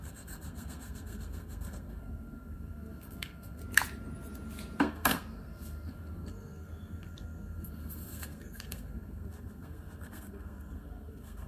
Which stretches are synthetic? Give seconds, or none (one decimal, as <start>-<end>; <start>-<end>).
0.0-3.6; 4.8-11.5